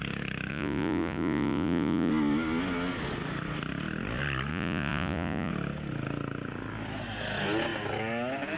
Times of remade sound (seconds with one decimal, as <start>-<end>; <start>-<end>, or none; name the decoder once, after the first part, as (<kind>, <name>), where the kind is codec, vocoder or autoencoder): 0.5-2.1 (vocoder, Vocos); 4.5-5.5